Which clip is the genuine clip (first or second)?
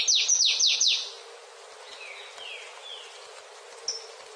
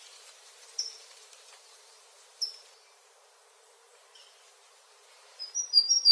first